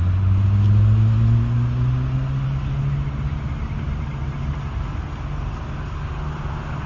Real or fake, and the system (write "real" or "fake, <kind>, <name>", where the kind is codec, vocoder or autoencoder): real